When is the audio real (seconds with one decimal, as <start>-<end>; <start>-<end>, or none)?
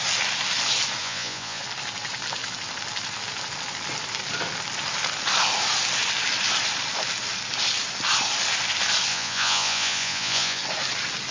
0.0-1.0; 1.6-9.1; 10.6-11.3